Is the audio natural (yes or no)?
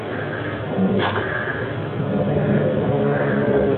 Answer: no